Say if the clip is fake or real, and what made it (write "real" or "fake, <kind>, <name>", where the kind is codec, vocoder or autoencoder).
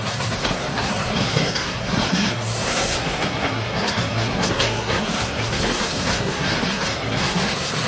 fake, codec, SNAC